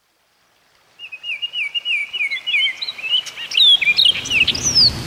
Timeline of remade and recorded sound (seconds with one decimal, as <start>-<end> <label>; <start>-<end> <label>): 0.0-2.0 remade; 2.0-5.1 recorded